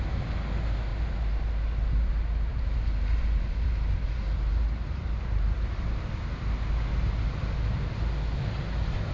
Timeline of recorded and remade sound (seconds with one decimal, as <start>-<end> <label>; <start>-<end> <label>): 0.0-0.9 recorded; 0.9-1.4 remade; 1.4-2.5 recorded; 2.5-6.1 remade; 6.1-9.1 recorded